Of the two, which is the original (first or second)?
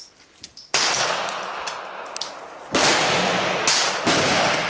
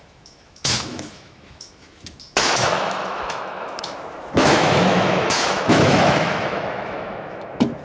first